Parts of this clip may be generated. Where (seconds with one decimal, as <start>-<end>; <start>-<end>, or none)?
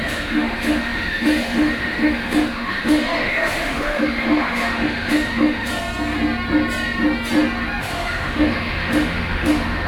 0.0-5.7; 7.8-9.9